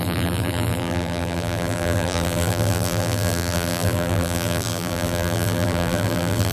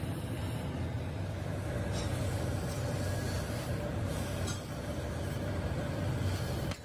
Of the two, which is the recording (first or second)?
second